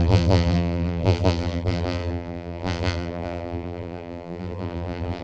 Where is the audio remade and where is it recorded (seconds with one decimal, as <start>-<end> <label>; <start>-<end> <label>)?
0.0-5.2 remade